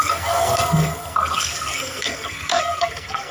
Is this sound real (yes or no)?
no